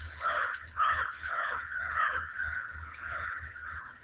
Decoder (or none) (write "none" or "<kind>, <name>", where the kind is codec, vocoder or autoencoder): codec, HILCodec